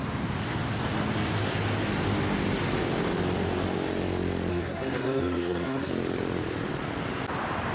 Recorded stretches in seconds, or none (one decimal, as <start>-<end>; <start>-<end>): 0.0-4.5; 5.9-7.7